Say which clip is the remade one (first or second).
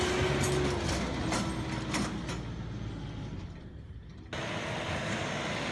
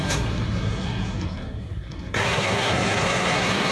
second